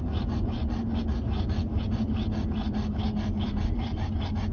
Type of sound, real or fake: real